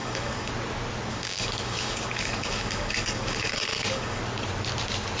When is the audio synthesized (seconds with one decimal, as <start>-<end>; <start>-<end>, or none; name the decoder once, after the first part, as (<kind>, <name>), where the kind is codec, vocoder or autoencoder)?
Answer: 0.0-0.5 (codec, DAC); 1.1-4.2